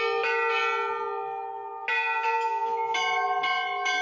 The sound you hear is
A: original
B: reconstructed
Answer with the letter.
A